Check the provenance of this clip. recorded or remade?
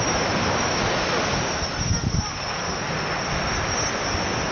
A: recorded